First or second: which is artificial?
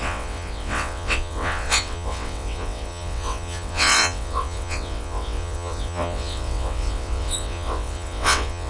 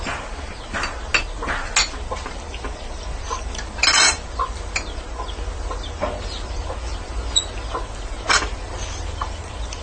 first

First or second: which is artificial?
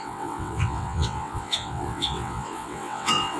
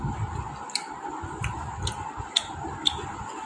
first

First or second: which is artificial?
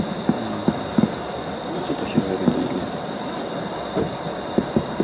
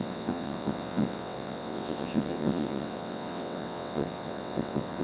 second